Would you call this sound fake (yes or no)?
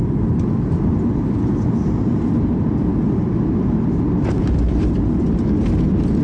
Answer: no